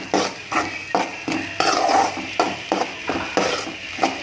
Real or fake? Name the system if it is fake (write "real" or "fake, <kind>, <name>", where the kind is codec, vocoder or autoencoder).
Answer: real